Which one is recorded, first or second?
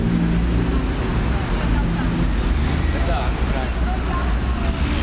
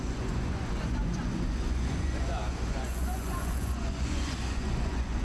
first